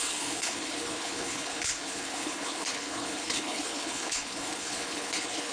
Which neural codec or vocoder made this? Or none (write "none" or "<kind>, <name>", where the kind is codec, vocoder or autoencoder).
codec, HILCodec